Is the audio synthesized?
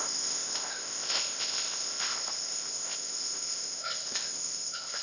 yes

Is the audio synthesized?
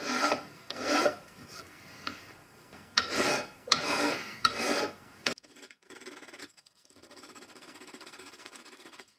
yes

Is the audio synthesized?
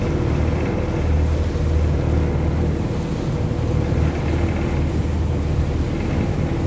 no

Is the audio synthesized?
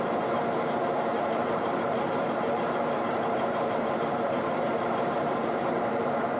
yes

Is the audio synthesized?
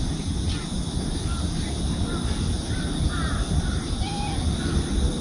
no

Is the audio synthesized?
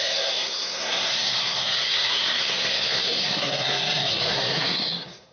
yes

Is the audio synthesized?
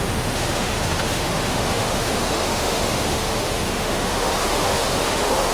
yes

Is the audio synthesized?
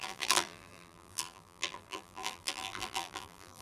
yes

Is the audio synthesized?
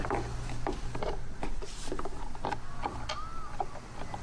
no